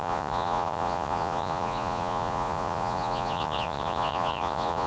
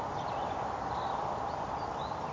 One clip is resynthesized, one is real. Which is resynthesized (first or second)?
first